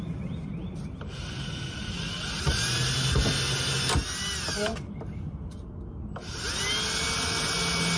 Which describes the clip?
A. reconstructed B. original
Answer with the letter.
B